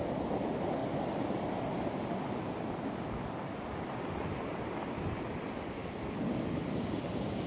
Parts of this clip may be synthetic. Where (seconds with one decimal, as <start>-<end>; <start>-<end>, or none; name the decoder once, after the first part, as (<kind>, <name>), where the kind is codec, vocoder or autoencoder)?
none